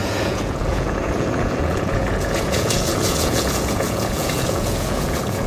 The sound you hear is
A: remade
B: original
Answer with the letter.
A